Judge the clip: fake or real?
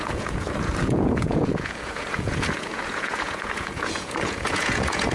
fake